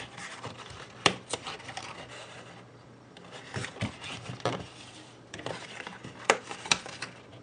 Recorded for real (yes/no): no